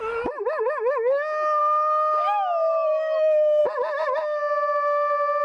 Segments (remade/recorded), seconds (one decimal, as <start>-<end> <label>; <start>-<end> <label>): 0.0-1.6 recorded; 1.6-3.6 remade; 3.6-5.4 recorded